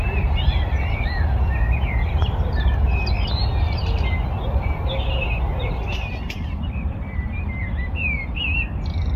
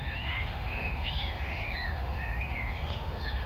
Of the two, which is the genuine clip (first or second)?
first